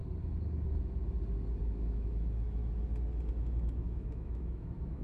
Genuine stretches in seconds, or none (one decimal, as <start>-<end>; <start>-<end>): 0.0-1.6; 2.6-3.4